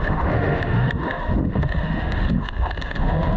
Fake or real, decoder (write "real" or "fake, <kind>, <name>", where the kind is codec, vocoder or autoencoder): fake, autoencoder, DAC-VAE